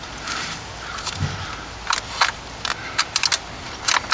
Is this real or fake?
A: real